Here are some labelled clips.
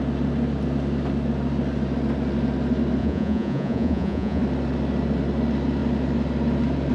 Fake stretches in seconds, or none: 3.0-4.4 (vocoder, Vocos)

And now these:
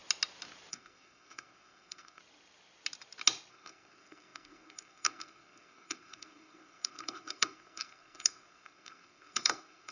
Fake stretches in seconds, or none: 0.7-2.2 (codec, SNAC); 3.5-9.9

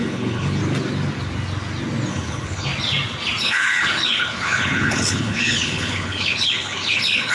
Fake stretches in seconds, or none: 0.0-0.6 (codec, HILCodec); 2.1-2.7; 3.4-7.3